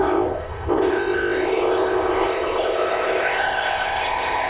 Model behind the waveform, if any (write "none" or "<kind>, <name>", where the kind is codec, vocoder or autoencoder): codec, ZipCodec